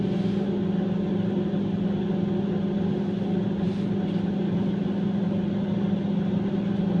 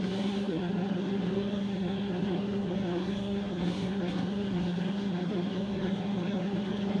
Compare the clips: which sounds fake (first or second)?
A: second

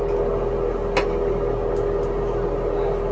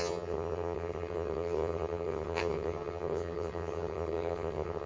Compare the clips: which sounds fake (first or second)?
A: second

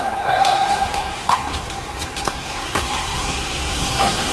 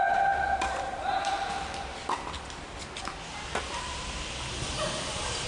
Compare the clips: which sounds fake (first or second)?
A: first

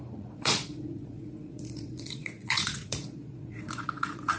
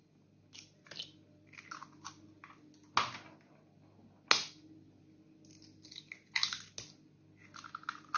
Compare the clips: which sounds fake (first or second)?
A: first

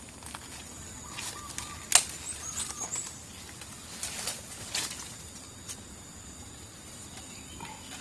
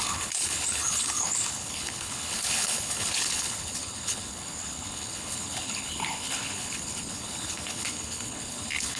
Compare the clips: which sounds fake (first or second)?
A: second